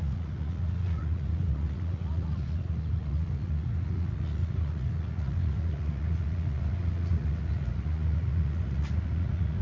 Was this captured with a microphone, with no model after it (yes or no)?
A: no